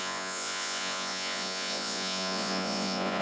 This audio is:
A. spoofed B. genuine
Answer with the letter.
A